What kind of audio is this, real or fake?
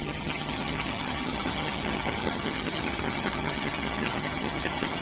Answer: fake